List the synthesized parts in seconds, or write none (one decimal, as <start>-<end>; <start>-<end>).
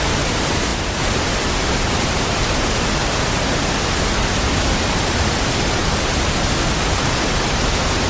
none